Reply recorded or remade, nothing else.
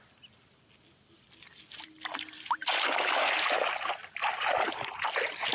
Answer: recorded